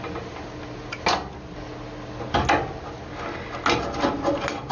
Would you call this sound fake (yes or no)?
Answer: no